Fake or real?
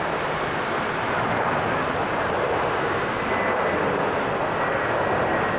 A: real